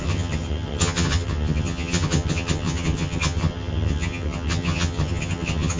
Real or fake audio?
fake